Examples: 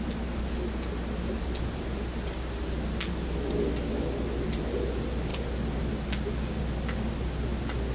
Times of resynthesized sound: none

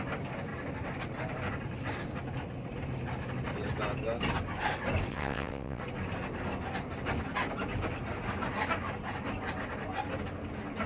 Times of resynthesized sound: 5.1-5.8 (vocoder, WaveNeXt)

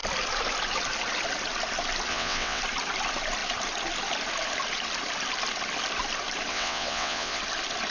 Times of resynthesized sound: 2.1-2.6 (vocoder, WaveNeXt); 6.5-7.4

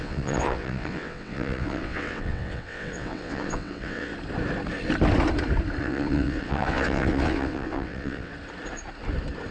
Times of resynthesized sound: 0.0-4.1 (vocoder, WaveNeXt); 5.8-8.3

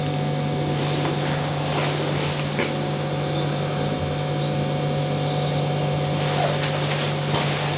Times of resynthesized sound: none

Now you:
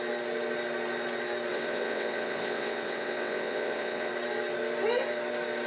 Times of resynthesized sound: 1.5-4.1 (vocoder, WaveNeXt)